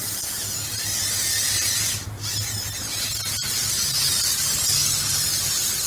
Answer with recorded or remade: recorded